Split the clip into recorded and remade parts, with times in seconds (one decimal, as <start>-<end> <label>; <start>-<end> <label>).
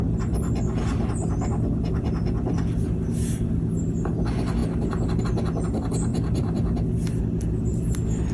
0.0-8.3 recorded